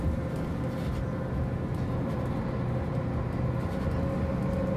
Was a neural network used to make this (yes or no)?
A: no